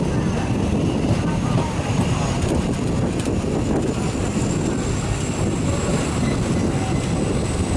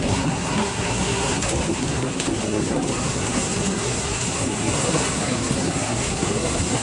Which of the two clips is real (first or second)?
first